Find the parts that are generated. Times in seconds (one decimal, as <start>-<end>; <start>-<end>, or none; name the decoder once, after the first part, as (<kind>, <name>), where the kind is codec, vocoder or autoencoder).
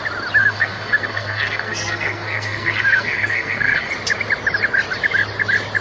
0.4-3.9 (codec, SNAC)